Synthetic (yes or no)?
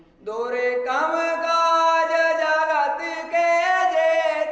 no